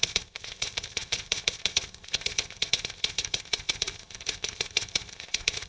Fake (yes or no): yes